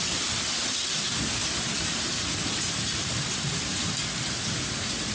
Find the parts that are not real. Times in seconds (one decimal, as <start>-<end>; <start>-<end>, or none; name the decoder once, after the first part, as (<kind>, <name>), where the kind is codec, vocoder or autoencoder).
1.4-3.9 (vocoder, BigVGAN v2)